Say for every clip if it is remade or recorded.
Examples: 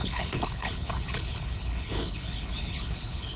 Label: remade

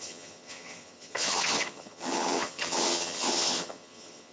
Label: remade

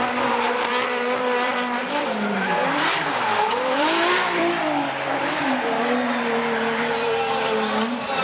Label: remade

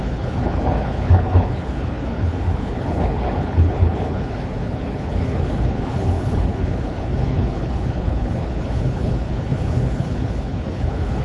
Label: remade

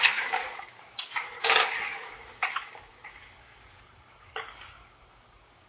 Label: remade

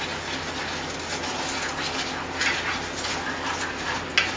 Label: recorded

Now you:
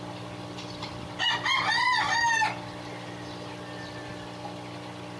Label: recorded